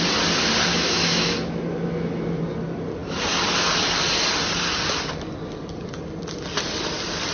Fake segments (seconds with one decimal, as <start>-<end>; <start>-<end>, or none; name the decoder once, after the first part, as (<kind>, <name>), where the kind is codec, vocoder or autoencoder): 0.7-2.4 (autoencoder, DAC-VAE)

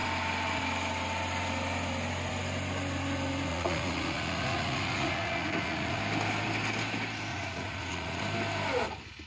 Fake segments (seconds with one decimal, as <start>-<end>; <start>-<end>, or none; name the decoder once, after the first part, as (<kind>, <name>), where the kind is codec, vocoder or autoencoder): 3.5-6.0 (vocoder, Vocos); 7.3-8.2

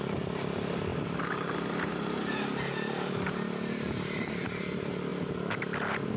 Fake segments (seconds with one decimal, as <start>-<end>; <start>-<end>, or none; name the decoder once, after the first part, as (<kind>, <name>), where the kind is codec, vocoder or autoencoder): none

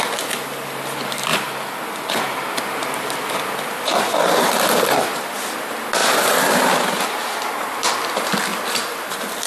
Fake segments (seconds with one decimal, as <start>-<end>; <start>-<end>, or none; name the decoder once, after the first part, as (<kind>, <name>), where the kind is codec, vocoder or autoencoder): none

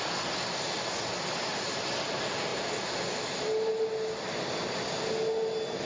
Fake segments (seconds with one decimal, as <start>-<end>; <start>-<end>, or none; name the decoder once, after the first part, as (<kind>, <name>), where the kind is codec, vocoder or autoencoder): none

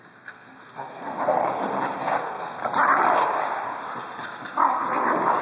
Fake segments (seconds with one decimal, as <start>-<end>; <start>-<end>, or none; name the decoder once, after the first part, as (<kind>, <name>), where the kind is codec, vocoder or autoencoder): 0.0-1.4 (codec, SNAC); 2.0-2.6